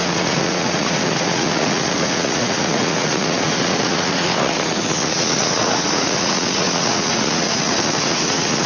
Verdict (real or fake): fake